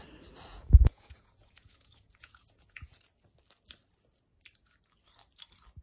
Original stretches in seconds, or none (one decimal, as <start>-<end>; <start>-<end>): 0.0-0.5; 3.0-5.8